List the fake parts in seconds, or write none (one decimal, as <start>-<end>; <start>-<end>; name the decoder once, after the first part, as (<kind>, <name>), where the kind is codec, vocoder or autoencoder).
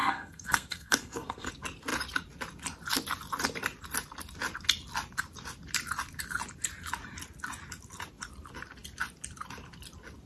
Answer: 0.0-1.5 (codec, SNAC)